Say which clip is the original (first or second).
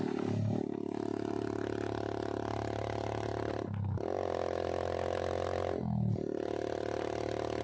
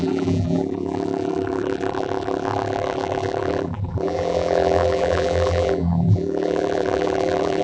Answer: first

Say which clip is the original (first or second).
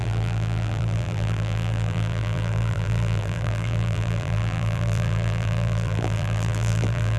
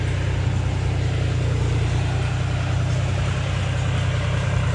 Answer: second